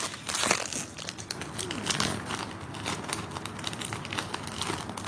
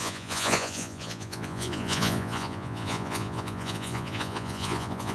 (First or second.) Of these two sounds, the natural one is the first